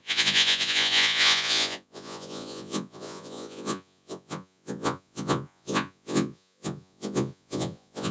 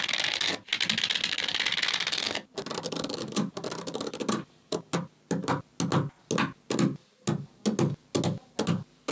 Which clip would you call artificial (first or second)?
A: first